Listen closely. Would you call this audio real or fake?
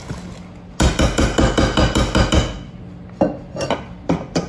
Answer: real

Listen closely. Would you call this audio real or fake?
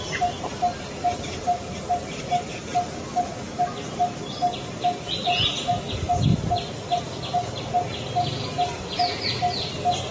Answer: real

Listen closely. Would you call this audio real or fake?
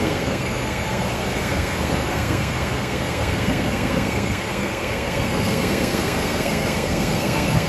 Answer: fake